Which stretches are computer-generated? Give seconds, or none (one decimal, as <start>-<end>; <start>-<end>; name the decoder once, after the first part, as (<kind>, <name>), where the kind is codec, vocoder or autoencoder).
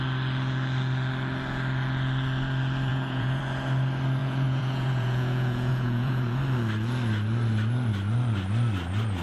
2.9-3.4 (vocoder, Vocos); 4.2-6.4